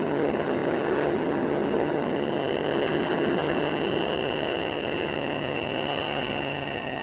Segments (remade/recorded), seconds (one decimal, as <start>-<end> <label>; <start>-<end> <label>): 0.0-7.0 remade